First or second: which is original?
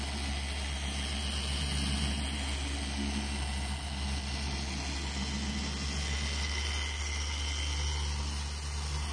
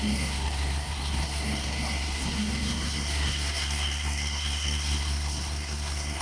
first